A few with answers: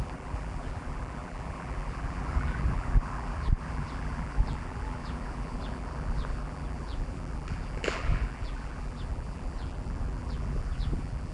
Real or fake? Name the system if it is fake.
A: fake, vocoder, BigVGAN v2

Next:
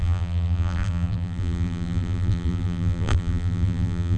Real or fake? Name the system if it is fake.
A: fake, vocoder, BigVGAN v2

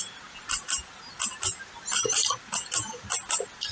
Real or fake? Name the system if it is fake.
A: real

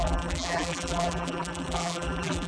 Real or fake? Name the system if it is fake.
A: fake, vocoder, BigVGAN v2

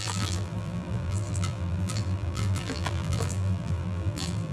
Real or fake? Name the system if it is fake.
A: fake, vocoder, BigVGAN v2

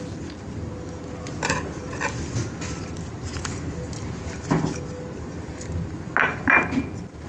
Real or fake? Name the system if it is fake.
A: real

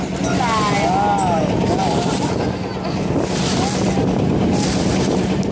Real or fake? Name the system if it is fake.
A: real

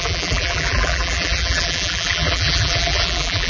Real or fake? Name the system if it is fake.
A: fake, vocoder, BigVGAN v2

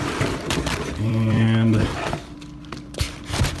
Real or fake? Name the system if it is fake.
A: fake, vocoder, BigVGAN v2